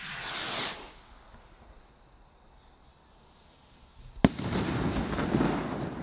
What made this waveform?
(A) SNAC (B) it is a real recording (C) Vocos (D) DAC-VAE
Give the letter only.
B